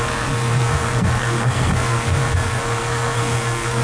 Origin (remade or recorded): remade